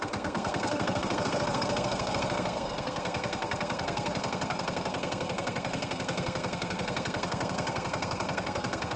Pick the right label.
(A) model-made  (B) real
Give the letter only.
A